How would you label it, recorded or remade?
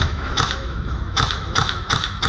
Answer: remade